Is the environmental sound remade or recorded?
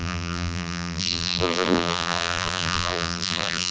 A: remade